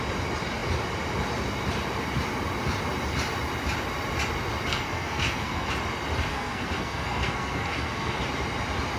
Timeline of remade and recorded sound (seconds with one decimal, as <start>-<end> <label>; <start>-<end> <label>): 0.0-4.7 recorded; 4.7-5.7 remade; 5.7-6.3 recorded; 6.3-8.2 remade; 8.2-9.0 recorded